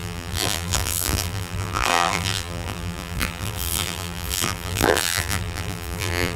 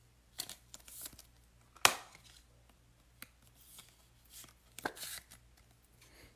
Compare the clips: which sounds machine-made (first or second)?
first